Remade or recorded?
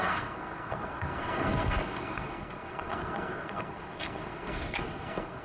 remade